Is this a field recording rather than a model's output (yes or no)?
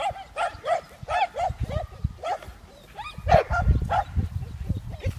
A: yes